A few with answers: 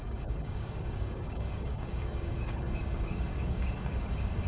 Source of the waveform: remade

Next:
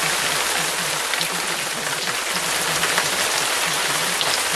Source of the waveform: recorded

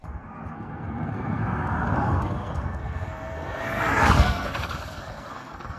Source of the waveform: remade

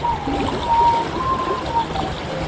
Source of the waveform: recorded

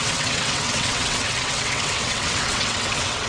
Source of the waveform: remade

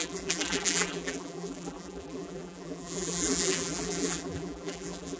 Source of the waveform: remade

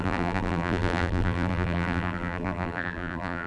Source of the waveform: remade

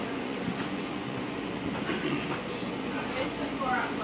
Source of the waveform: remade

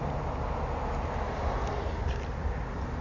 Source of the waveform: recorded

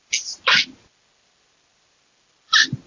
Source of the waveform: recorded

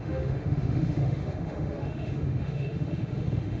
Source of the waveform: remade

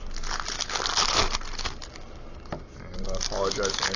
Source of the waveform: recorded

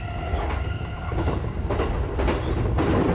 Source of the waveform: recorded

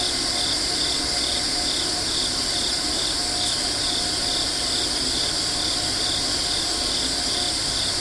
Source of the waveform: recorded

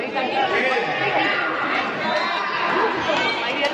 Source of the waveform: recorded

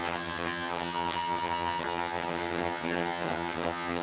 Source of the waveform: remade